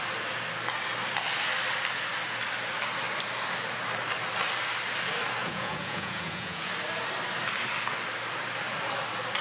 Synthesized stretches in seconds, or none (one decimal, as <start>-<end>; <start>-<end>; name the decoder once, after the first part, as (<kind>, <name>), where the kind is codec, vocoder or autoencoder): 5.4-6.7 (vocoder, Vocos)